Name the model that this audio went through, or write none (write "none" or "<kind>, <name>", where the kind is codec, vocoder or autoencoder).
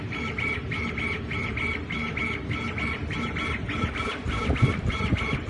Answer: vocoder, BigVGAN v2